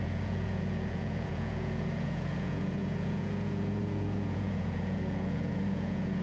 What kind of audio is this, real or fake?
fake